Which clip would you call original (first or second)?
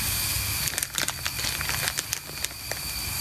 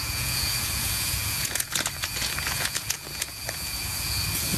first